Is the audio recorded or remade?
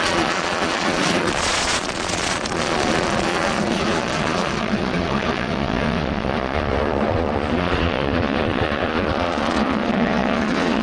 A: remade